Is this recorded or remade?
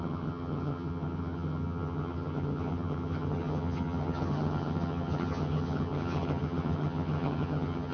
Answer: remade